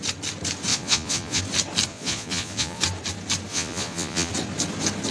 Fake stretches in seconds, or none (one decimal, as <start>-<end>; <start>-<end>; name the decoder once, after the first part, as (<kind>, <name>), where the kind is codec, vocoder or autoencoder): 0.7-1.4 (vocoder, Vocos); 1.9-2.8; 3.5-4.3